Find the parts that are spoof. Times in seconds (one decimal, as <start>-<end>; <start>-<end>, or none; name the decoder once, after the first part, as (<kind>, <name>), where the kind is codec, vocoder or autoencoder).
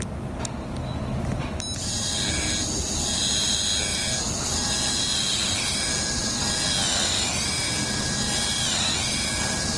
none